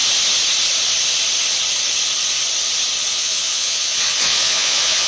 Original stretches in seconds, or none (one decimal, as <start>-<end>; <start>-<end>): 0.0-3.1